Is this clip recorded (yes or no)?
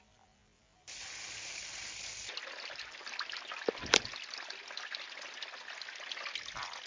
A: yes